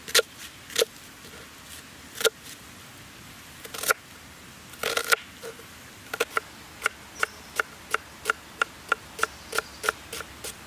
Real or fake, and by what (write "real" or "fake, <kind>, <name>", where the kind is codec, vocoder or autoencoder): real